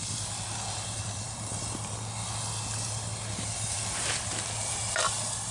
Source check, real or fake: real